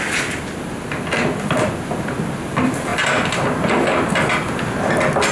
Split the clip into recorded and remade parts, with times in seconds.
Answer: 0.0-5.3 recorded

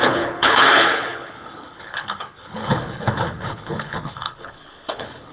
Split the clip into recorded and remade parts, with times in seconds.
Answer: 0.0-5.3 remade

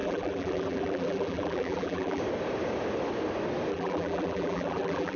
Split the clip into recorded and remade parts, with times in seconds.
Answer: 0.0-2.2 remade; 2.2-3.7 recorded; 3.7-5.2 remade

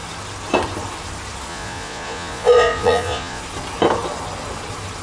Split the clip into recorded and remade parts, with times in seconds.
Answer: 0.0-1.5 recorded; 1.5-3.4 remade; 3.4-5.0 recorded

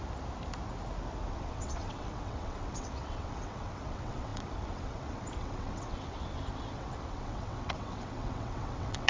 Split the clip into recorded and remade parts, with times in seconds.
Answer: 0.0-1.3 recorded; 1.3-9.1 remade

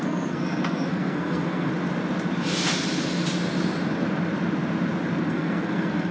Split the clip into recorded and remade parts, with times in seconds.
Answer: 0.0-1.7 remade; 1.7-5.2 recorded; 5.2-6.1 remade

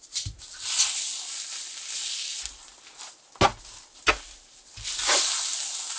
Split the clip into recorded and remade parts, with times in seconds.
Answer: 0.0-6.0 recorded

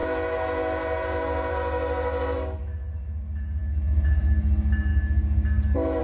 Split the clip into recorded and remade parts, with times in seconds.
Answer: 0.0-6.0 recorded